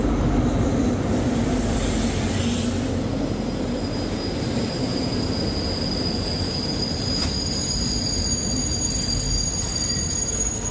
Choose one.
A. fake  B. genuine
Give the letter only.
B